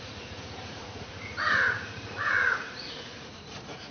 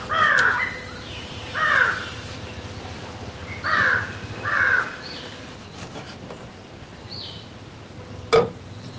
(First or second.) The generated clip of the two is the first